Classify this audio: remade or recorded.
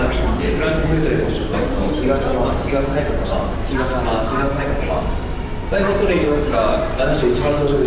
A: recorded